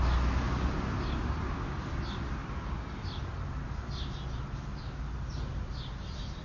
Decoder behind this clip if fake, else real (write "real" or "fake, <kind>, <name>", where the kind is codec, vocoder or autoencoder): real